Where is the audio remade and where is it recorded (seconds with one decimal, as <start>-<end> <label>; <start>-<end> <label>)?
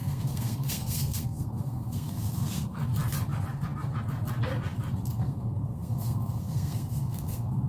0.0-2.9 remade; 2.9-5.1 recorded; 5.1-7.7 remade